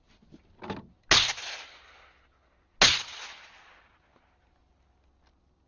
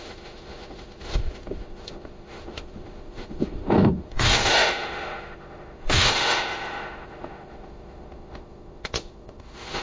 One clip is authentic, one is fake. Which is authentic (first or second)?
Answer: first